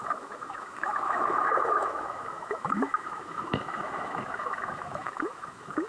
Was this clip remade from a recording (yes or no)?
yes